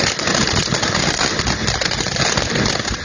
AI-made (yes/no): no